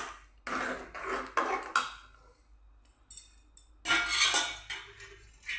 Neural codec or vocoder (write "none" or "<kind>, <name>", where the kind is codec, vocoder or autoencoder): none